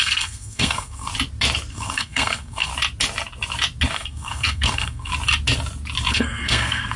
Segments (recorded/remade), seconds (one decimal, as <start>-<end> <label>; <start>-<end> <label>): 0.0-1.1 remade; 1.1-1.7 recorded; 1.7-2.7 remade; 2.7-3.9 recorded; 3.9-5.1 remade; 5.1-6.1 recorded; 6.1-7.0 remade